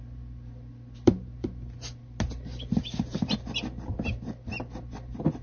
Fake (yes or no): no